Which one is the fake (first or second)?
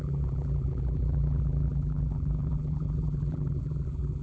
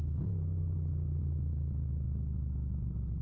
first